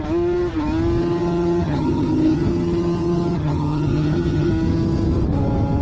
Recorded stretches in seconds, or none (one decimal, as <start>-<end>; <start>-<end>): 0.0-1.0; 4.5-5.8